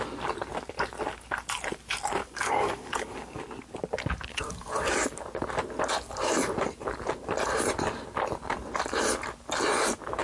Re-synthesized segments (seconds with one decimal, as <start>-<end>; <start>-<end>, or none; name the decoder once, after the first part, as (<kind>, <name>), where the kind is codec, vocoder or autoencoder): 2.2-3.4 (codec, DAC); 4.3-4.9